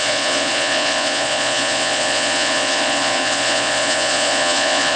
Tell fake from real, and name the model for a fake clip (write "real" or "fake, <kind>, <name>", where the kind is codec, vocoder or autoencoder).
fake, vocoder, Vocos